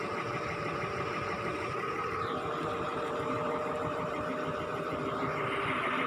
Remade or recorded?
remade